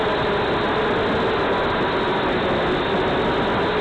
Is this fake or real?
real